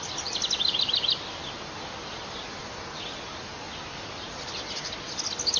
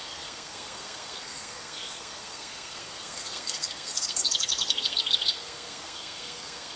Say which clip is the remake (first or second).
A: second